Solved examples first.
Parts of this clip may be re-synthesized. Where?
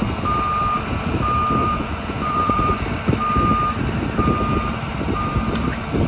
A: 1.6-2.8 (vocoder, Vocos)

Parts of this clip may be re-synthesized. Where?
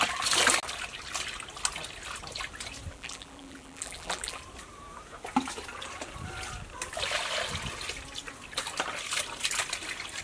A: 2.9-4.4 (vocoder, BigVGAN v2)